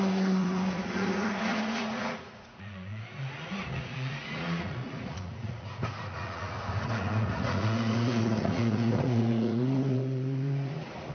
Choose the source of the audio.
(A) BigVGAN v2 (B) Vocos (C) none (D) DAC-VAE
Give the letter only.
B